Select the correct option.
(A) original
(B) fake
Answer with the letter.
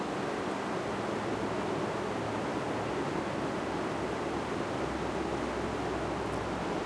A